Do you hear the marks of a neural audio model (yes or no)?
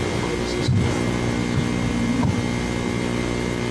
no